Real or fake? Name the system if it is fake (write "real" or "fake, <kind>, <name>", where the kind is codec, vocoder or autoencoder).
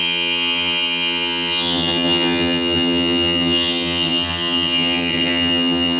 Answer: fake, vocoder, HiFi-GAN